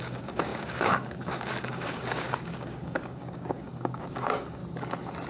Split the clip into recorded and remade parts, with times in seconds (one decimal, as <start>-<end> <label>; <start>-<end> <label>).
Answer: 0.0-4.6 remade; 4.6-5.3 recorded

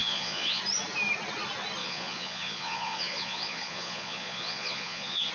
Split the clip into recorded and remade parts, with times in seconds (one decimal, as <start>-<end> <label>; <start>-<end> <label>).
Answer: 0.0-0.6 remade; 0.6-1.8 recorded; 1.8-5.3 remade

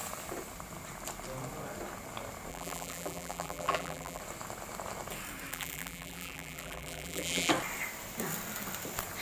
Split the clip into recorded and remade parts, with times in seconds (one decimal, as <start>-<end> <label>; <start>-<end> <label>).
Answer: 0.0-2.5 recorded; 2.5-4.2 remade; 4.2-5.5 recorded; 5.5-7.5 remade; 7.5-9.2 recorded

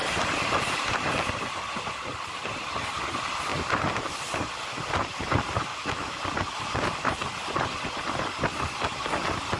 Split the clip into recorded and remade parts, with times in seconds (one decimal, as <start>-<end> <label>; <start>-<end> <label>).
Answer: 0.0-5.7 recorded; 5.7-6.2 remade; 6.2-9.6 recorded